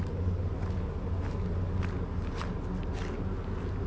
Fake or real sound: real